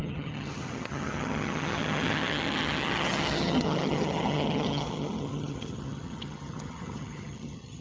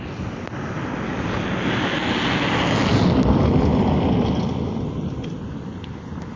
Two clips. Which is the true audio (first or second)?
second